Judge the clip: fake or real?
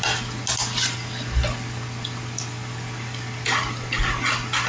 real